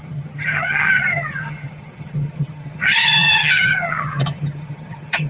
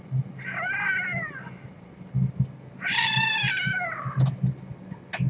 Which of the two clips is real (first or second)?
second